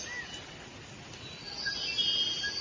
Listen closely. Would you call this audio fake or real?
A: real